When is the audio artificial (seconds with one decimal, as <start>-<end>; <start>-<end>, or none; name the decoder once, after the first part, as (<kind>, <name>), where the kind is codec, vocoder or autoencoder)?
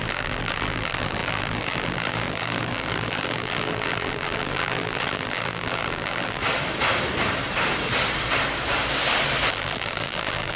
0.0-6.4 (vocoder, BigVGAN v2); 9.5-10.6